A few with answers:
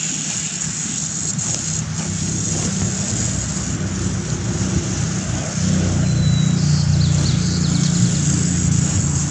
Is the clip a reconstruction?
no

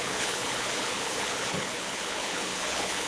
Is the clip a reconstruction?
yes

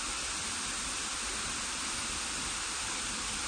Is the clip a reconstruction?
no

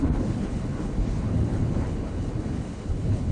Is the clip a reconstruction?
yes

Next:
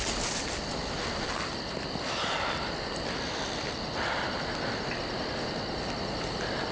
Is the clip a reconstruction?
no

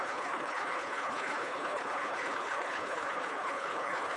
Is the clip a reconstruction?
yes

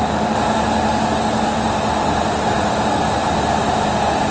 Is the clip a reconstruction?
no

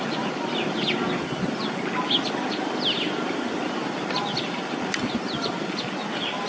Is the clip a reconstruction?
no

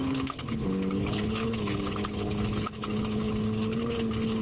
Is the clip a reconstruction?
yes